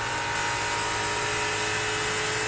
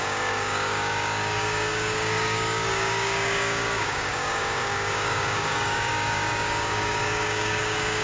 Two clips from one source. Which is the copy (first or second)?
second